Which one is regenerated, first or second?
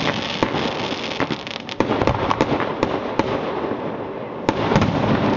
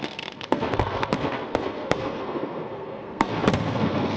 second